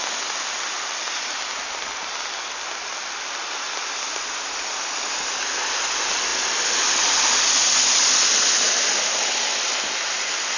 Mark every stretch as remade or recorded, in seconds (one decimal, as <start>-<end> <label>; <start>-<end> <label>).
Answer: 0.0-10.6 recorded